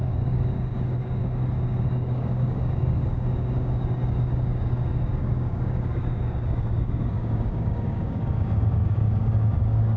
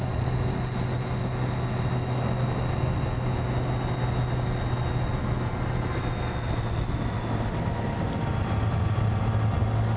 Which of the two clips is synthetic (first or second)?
first